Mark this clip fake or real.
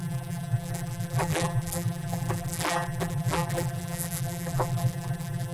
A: fake